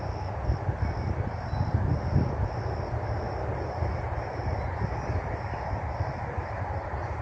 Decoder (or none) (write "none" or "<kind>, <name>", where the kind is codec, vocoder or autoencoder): none